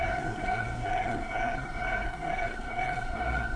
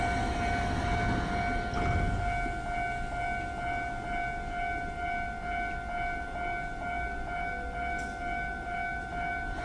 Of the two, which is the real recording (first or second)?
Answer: second